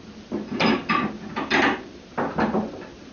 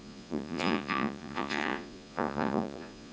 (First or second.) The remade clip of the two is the second